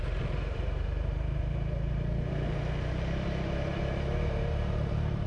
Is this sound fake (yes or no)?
yes